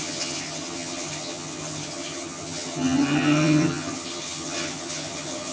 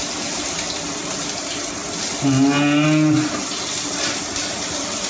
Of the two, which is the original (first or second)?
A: second